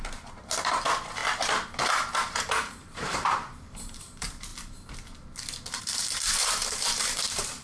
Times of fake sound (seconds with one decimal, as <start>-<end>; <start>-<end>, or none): 0.0-1.2; 2.5-4.5; 5.8-7.6